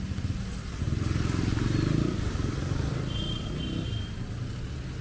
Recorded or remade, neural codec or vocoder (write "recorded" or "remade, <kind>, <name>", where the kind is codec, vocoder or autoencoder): recorded